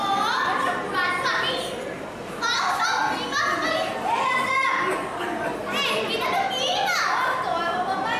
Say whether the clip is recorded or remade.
recorded